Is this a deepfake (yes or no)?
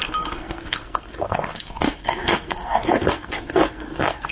yes